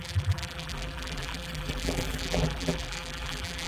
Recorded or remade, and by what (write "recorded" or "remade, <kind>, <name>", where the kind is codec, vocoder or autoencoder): remade, vocoder, BigVGAN v2